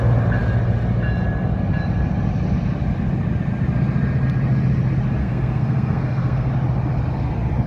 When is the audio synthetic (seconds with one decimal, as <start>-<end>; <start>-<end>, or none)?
5.2-6.5